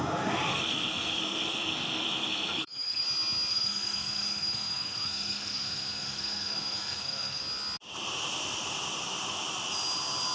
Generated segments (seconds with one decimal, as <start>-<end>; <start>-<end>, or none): 0.5-3.0; 3.5-7.4